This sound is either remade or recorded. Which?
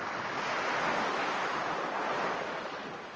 recorded